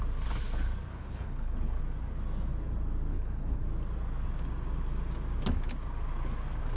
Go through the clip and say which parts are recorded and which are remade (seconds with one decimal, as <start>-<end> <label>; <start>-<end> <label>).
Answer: 0.0-0.9 recorded; 0.9-1.8 remade; 1.8-3.1 recorded; 3.1-3.6 remade; 3.6-6.8 recorded